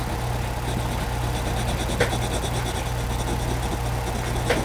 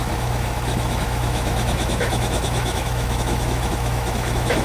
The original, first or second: first